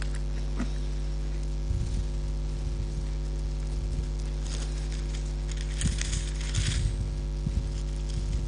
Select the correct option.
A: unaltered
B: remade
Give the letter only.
A